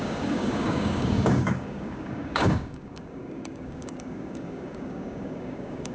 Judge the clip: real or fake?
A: fake